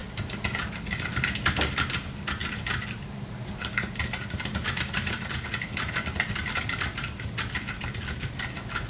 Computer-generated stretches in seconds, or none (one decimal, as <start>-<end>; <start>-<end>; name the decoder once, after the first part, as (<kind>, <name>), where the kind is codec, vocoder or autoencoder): none